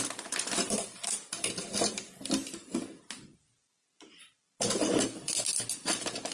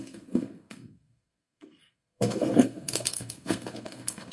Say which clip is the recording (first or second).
first